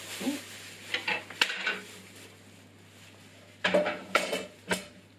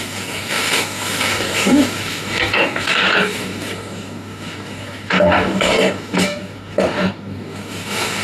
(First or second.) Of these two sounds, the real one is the first